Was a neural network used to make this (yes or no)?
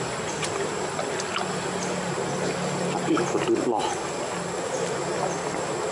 no